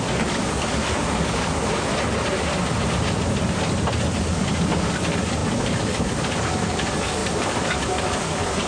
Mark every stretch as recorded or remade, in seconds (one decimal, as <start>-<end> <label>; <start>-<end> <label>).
0.0-1.9 remade; 1.9-4.2 recorded; 4.2-8.7 remade